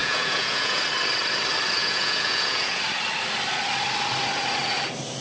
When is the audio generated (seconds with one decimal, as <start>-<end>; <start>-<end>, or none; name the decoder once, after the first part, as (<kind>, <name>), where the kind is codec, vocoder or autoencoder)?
0.0-0.8 (vocoder, Vocos); 1.8-2.8